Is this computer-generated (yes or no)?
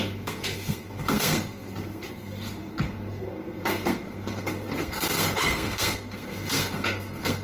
yes